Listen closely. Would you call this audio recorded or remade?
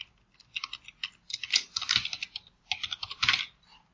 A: recorded